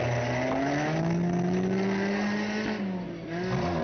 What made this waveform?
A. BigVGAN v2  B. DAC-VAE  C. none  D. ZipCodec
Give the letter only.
C